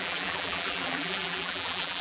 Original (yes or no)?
no